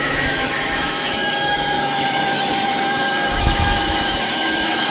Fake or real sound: fake